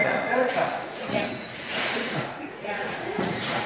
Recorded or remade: remade